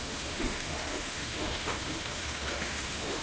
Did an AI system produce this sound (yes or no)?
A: yes